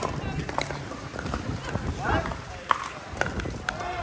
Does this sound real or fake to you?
real